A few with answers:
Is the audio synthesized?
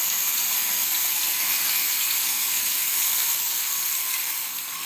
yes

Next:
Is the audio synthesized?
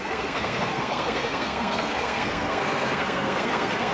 yes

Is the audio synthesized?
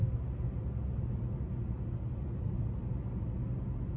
no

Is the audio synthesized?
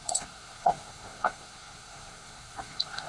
yes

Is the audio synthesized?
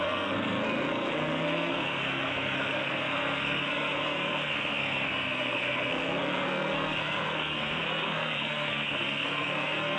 yes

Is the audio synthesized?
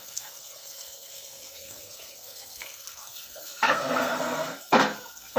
yes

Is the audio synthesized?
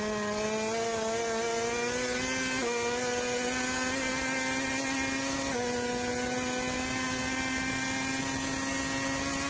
no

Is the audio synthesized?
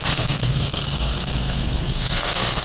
yes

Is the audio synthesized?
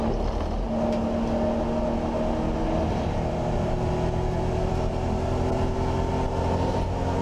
no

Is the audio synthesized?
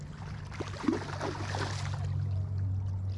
no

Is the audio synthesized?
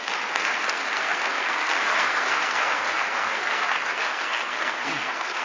yes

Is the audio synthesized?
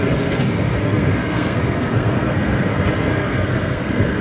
yes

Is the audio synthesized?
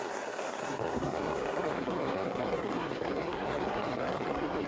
yes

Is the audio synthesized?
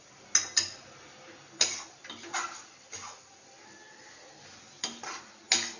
no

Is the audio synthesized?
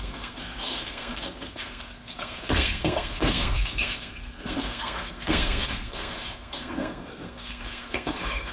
yes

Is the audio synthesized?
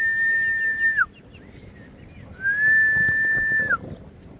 no